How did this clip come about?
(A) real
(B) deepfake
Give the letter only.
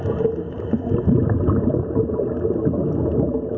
A